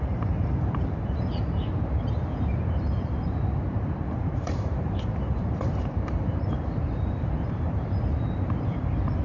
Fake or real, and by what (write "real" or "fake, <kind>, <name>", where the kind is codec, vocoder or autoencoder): fake, vocoder, BigVGAN v2